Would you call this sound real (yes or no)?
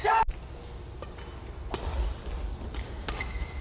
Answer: yes